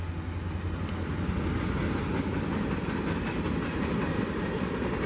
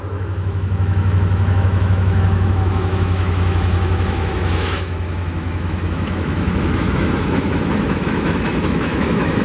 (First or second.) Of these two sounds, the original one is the first